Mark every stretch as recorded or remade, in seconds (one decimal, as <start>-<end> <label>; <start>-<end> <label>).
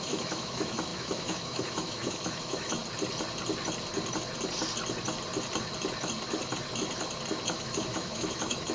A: 0.0-2.8 remade; 2.8-7.5 recorded; 7.5-8.7 remade